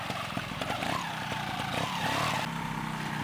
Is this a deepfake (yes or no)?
no